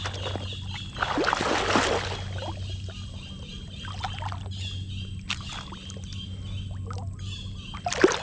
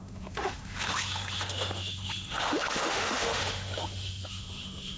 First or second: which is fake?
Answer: second